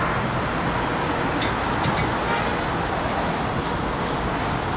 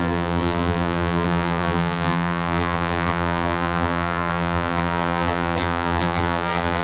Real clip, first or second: first